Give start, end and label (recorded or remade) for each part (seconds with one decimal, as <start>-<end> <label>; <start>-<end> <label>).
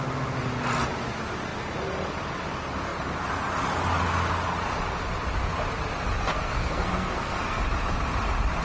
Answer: 0.0-6.3 recorded; 6.3-7.6 remade; 7.6-8.6 recorded